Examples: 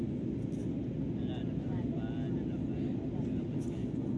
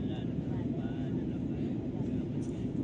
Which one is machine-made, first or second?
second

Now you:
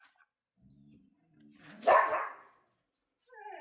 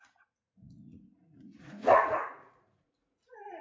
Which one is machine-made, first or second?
second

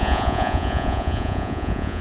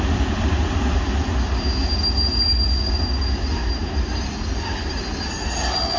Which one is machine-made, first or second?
first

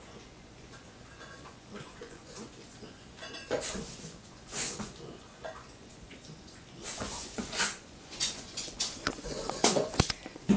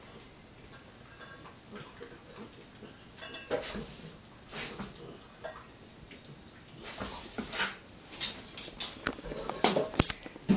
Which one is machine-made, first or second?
first